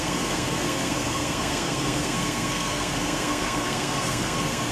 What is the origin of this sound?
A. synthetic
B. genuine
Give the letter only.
A